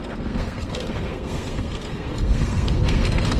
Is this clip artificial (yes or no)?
yes